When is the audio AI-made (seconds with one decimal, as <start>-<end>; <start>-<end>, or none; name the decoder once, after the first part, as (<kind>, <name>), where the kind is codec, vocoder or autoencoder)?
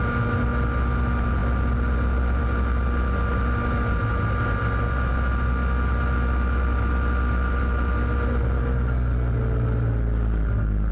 none